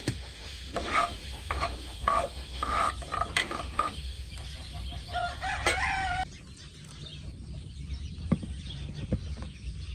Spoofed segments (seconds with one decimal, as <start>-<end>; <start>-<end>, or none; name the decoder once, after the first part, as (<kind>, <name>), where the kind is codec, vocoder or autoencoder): 0.0-2.9 (autoencoder, DAC-VAE); 3.4-4.3